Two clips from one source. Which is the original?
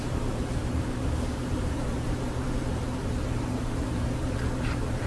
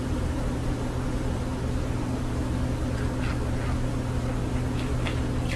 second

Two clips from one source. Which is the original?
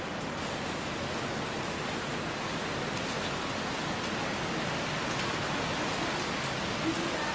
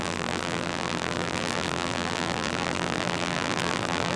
first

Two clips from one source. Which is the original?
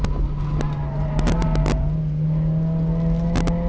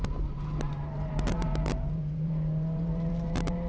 first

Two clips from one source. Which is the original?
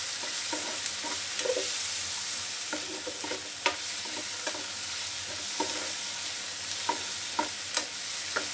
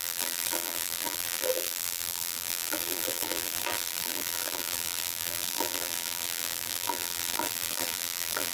first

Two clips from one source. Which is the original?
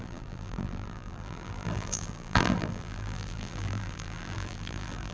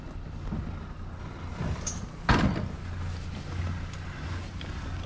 second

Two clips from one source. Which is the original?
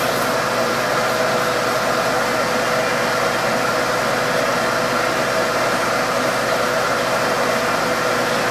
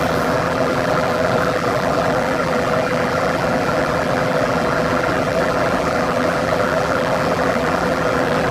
first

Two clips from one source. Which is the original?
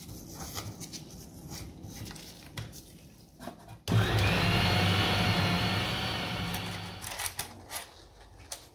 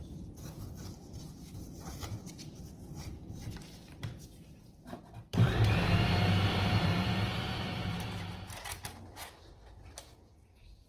first